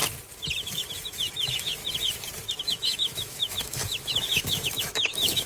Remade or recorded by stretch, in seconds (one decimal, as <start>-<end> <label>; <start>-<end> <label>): 0.0-0.7 recorded; 0.7-1.8 remade; 1.8-2.6 recorded; 2.6-5.5 remade